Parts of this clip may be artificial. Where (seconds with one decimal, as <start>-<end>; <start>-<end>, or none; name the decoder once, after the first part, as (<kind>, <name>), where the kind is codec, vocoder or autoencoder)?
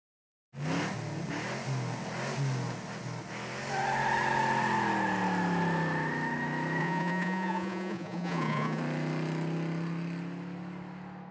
6.8-8.8 (vocoder, Vocos)